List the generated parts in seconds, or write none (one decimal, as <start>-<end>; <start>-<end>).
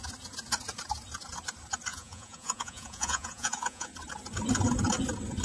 1.9-3.9